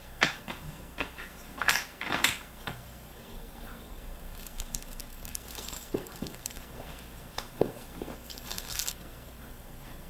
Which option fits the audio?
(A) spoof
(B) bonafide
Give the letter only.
A